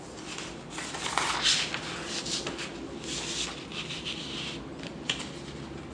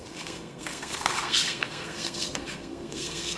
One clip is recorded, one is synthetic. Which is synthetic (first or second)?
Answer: second